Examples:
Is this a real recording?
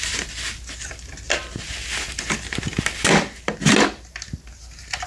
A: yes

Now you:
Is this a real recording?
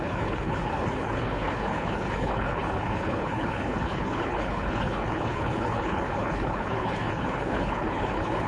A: no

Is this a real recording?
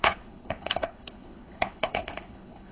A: no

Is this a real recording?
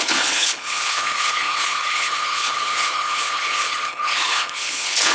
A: no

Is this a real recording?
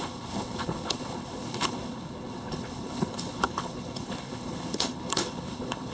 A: no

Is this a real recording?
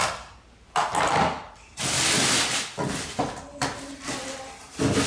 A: yes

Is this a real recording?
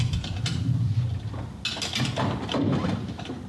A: yes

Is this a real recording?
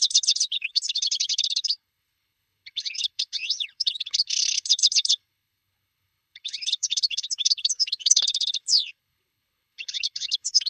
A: no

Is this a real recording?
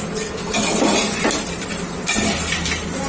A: yes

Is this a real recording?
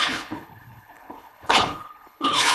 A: no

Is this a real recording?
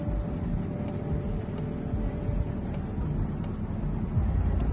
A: yes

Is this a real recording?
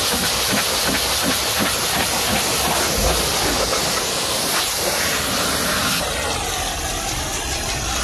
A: yes